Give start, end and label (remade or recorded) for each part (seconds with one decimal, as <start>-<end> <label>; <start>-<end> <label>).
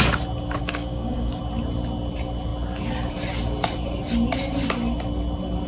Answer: 0.0-0.6 recorded; 0.6-1.4 remade; 1.4-5.7 recorded